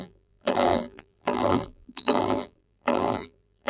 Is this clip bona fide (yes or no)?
no